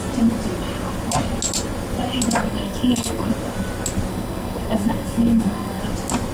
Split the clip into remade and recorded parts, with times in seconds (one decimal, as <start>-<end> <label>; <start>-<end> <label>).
0.0-2.4 recorded; 2.4-3.3 remade; 3.3-4.1 recorded; 4.1-5.8 remade; 5.8-6.3 recorded